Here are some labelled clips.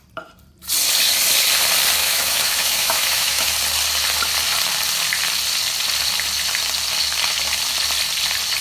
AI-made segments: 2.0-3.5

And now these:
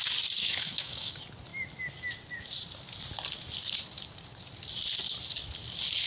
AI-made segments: 0.4-1.1

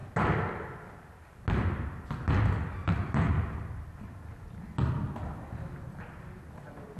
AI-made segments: none

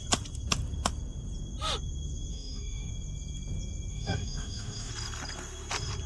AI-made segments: 2.3-2.9; 3.9-4.9

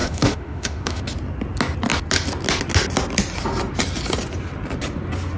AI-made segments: 0.0-1.0